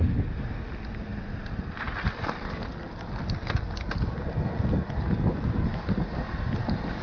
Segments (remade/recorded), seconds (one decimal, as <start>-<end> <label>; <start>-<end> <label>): 0.0-7.0 recorded